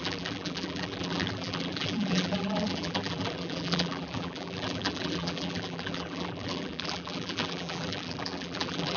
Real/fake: fake